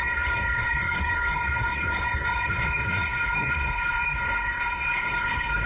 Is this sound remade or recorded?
remade